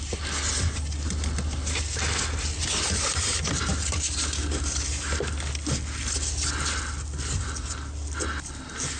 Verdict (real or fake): real